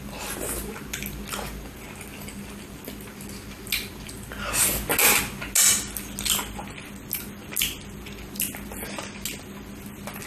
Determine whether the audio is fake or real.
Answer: real